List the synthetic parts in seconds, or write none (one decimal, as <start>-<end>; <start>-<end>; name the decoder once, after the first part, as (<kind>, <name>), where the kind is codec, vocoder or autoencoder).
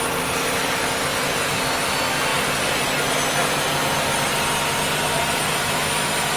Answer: 1.1-1.7 (vocoder, BigVGAN v2)